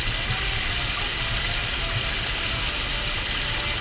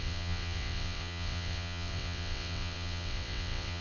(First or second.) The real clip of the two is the first